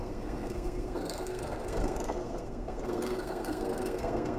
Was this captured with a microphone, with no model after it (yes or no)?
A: no